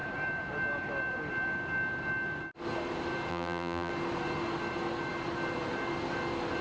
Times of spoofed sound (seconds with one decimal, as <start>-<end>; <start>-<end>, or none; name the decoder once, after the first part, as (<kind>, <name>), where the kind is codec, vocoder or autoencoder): 3.3-3.9 (vocoder, BigVGAN v2)